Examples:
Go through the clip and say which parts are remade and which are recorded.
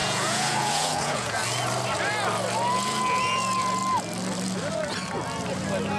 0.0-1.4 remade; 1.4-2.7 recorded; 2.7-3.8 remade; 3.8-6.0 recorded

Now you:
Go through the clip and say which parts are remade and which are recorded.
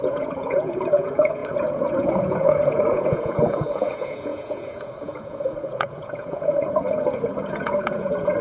0.0-8.4 remade